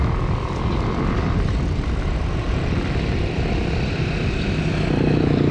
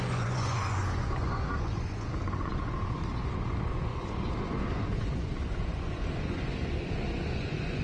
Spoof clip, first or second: second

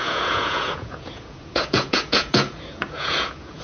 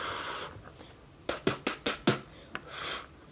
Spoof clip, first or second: first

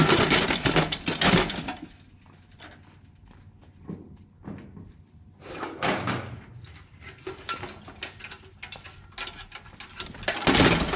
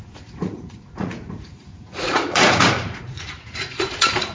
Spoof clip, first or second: second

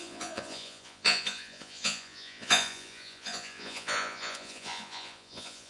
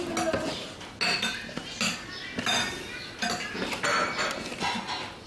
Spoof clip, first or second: first